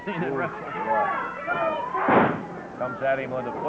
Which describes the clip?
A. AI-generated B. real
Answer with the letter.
B